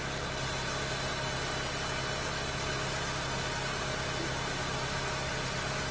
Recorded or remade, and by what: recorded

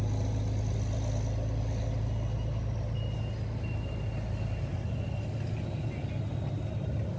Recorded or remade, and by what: recorded